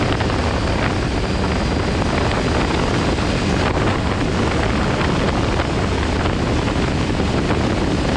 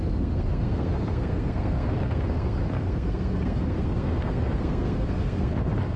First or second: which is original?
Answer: first